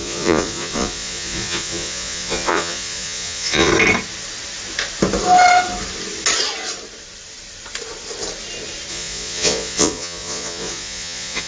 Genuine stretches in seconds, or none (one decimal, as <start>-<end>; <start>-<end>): 3.7-8.9